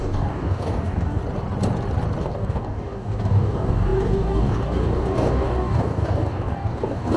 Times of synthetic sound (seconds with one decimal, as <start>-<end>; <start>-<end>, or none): 0.0-1.2; 2.2-7.2